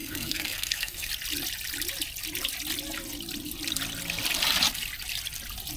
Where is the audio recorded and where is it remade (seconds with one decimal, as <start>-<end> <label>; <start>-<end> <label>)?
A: 0.0-1.1 remade; 1.1-5.8 recorded